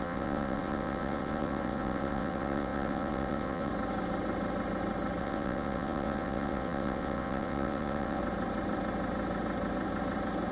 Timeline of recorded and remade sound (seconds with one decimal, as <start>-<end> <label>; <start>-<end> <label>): 0.0-3.7 remade; 3.7-5.2 recorded; 5.2-8.2 remade; 8.2-10.5 recorded